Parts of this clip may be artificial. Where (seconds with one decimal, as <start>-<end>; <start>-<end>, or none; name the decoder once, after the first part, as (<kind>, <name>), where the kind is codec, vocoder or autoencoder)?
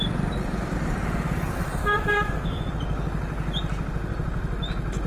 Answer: 1.8-2.7 (autoencoder, DAC-VAE)